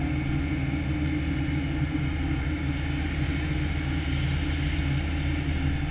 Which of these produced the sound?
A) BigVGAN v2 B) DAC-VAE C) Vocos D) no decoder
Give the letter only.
D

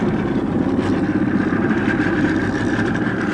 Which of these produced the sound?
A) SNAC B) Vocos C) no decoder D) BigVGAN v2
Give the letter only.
D